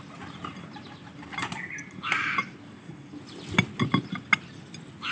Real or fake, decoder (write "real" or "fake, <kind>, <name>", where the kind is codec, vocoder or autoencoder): real